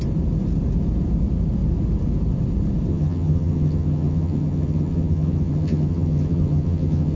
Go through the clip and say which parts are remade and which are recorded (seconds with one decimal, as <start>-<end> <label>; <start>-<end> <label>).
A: 0.0-2.9 recorded; 2.9-7.2 remade